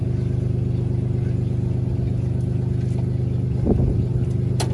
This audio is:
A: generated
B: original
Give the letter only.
B